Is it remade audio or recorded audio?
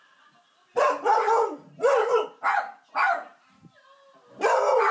recorded